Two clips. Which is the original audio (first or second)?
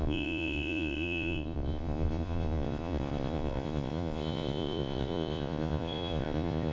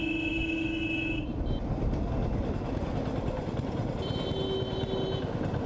second